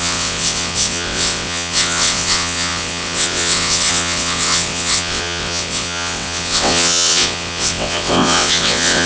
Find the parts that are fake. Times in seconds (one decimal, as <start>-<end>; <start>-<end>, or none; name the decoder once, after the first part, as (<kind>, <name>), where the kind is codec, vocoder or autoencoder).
0.0-9.1 (vocoder, WaveNeXt)